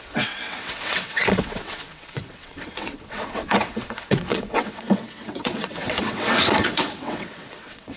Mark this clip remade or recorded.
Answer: remade